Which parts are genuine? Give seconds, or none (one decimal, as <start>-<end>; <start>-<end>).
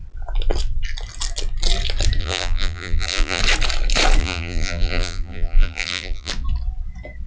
0.0-2.2; 3.4-4.2; 6.3-7.3